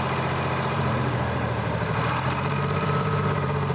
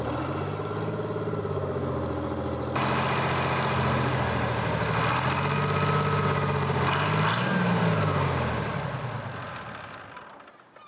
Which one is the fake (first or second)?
first